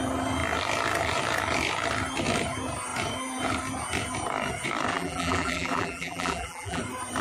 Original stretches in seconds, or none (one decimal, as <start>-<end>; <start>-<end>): 0.0-4.9; 6.8-7.2